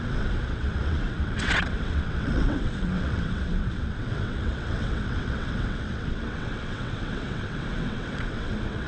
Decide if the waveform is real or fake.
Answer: fake